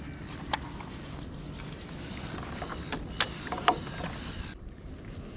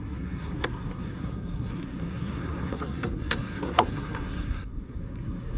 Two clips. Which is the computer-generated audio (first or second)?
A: second